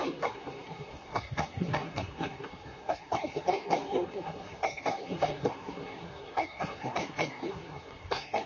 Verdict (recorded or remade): remade